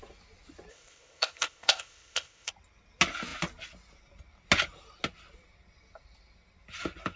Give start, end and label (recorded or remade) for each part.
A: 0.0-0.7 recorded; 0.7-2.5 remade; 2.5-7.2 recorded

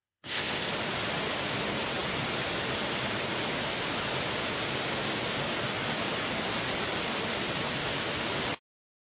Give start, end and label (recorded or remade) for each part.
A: 0.0-0.7 remade; 0.7-9.1 recorded

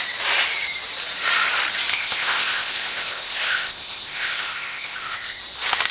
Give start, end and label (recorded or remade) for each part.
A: 0.0-1.9 recorded; 1.9-5.4 remade; 5.4-5.9 recorded

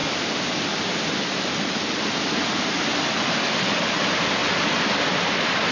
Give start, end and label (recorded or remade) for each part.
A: 0.0-5.7 recorded

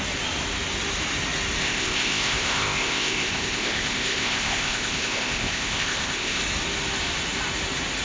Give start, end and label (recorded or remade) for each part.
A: 0.0-1.6 recorded; 1.6-6.4 remade; 6.4-8.0 recorded

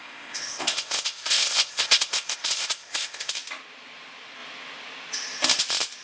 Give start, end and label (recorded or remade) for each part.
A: 0.0-3.3 remade; 3.3-6.0 recorded